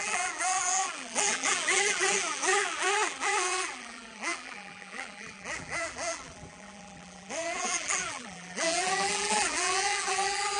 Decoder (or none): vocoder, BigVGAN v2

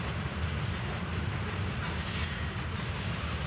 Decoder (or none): none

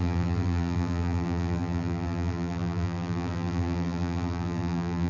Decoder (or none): vocoder, BigVGAN v2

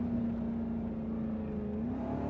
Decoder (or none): none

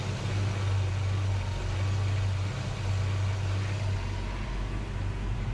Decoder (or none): none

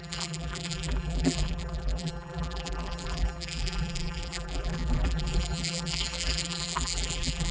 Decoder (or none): vocoder, BigVGAN v2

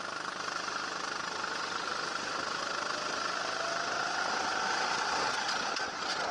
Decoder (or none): none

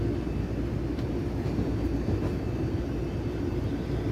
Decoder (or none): none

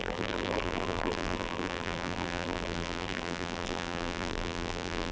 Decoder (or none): vocoder, BigVGAN v2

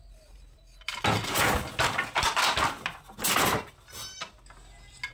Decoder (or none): none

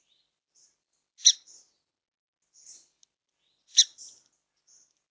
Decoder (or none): none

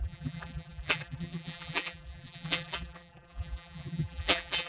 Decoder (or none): vocoder, BigVGAN v2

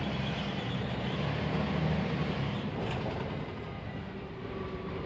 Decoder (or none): vocoder, BigVGAN v2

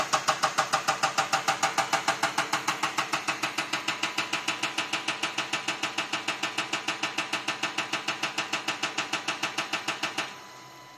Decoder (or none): none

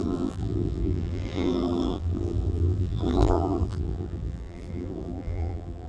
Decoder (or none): vocoder, BigVGAN v2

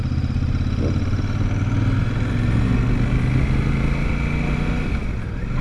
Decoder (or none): none